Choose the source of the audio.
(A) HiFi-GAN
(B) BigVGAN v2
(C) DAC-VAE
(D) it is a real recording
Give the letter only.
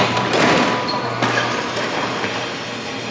D